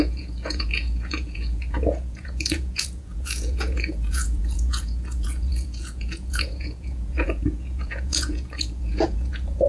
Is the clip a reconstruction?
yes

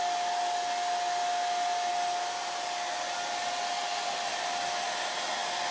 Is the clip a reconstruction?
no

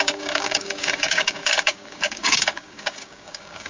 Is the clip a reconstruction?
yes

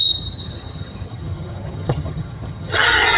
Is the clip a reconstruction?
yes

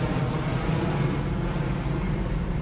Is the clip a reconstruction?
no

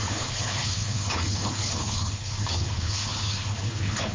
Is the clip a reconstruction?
yes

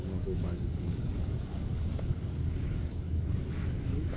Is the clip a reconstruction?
yes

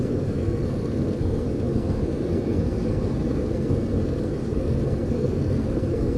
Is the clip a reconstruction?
yes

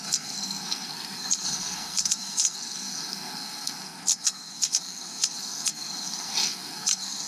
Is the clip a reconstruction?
yes